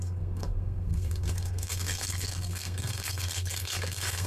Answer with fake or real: fake